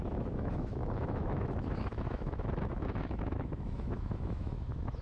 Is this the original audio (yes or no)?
no